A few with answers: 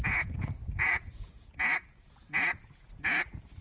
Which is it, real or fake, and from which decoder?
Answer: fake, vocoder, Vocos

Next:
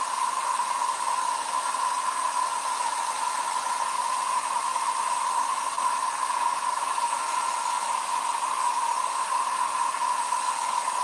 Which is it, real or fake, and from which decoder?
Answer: real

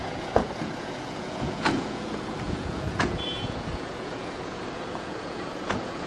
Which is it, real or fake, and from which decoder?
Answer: fake, vocoder, Vocos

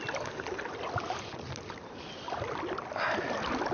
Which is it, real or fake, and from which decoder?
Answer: real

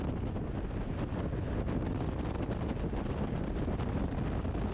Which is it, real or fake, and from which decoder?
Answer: real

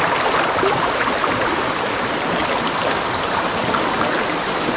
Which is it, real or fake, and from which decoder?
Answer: real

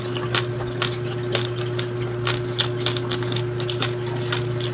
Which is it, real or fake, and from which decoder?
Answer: real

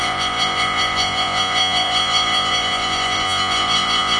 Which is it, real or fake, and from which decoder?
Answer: fake, vocoder, Vocos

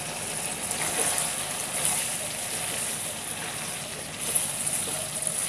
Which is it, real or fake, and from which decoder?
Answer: real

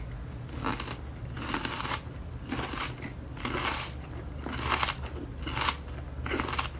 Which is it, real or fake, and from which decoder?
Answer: real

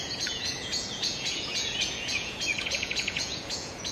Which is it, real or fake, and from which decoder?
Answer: fake, vocoder, Vocos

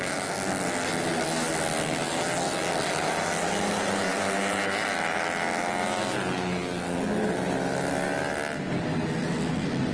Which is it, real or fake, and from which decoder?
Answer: real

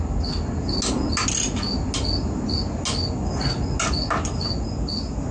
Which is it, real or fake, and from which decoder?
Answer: real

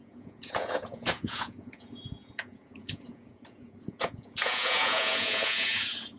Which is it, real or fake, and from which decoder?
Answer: fake, vocoder, Vocos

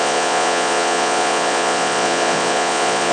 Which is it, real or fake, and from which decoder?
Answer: fake, vocoder, Vocos